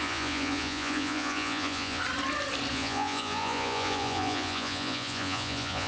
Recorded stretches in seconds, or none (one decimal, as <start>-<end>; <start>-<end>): 2.0-2.7